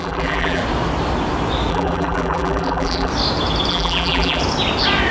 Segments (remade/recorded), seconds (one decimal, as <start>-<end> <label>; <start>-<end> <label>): 0.0-0.6 remade; 0.6-1.7 recorded; 1.7-3.1 remade; 3.1-3.7 recorded; 3.7-4.4 remade; 4.4-5.1 recorded